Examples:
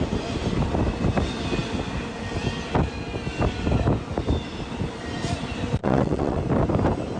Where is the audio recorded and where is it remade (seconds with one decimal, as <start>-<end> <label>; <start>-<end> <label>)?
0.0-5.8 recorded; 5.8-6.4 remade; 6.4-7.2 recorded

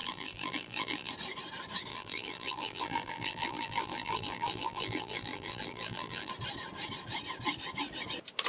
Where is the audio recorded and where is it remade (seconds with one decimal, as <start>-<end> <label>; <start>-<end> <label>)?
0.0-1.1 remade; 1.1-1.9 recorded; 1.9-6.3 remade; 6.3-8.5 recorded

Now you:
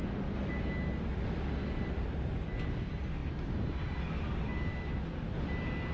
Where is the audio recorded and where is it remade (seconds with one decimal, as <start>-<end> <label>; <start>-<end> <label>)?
0.0-5.9 recorded